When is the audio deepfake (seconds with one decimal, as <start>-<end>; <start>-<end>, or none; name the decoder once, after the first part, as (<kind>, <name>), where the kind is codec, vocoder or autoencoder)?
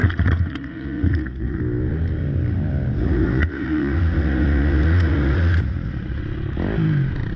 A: 0.0-1.6 (vocoder, Vocos); 3.0-6.2